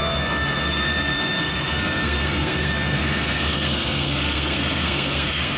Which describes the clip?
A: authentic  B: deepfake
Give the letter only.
B